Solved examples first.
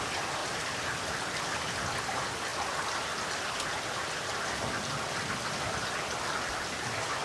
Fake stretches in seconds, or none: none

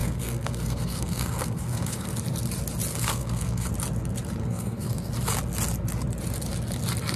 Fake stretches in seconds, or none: 0.0-2.1; 2.9-3.7; 4.4-5.1

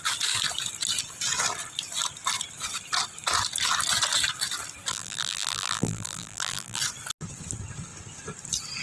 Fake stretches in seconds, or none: 4.9-6.8

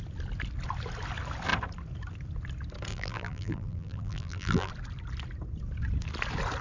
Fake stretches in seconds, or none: 2.9-4.7

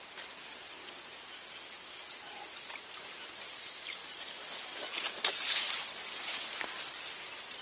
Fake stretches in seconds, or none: none

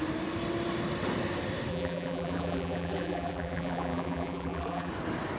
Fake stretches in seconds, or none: 1.7-4.9

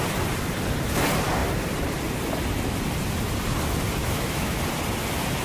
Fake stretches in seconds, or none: 4.0-4.6

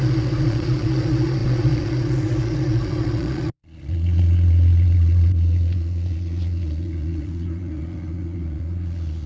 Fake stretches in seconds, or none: 0.0-9.3